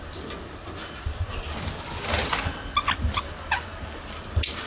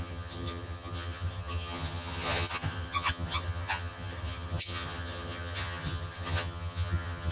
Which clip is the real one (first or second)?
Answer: first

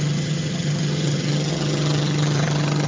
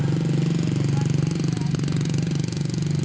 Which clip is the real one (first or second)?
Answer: second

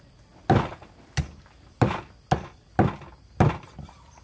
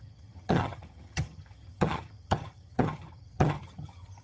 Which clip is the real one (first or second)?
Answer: first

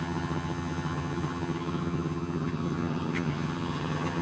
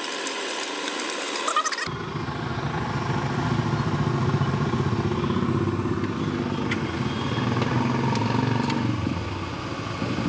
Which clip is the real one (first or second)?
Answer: second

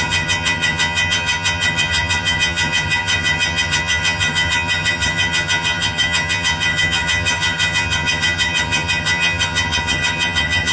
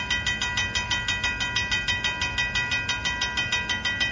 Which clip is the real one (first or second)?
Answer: second